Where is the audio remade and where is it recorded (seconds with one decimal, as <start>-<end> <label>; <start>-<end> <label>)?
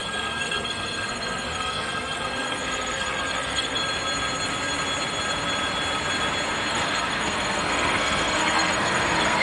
0.0-3.8 remade; 3.8-6.7 recorded; 6.7-9.4 remade